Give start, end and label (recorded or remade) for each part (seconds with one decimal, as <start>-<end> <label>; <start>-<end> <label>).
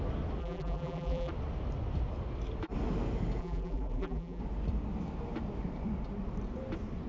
0.0-0.4 recorded; 0.4-1.3 remade; 1.3-3.4 recorded; 3.4-4.4 remade; 4.4-7.1 recorded